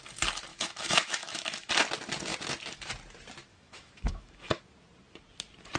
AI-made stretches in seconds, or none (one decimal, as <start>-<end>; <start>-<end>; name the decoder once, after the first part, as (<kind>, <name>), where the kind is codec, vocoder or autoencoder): 0.5-1.7 (autoencoder, DAC-VAE); 3.5-4.6